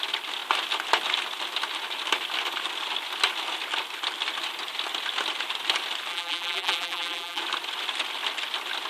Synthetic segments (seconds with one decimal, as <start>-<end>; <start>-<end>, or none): 6.1-7.4